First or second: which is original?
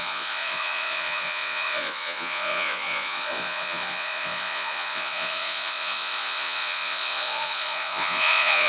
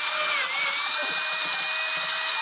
second